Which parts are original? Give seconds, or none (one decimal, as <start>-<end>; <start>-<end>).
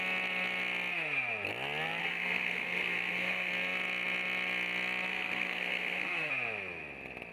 0.0-2.0; 3.5-5.1; 6.3-7.3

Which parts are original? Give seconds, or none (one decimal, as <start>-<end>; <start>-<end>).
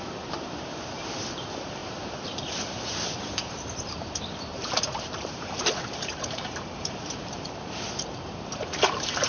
none